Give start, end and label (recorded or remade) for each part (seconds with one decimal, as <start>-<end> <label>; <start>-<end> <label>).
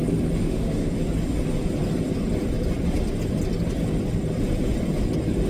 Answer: 0.0-0.4 recorded; 0.4-0.9 remade; 0.9-5.5 recorded